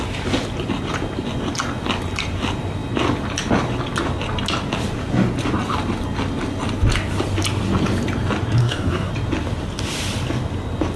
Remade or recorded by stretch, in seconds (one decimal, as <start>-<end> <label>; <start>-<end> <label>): 0.0-8.6 recorded; 8.6-9.1 remade; 9.1-11.0 recorded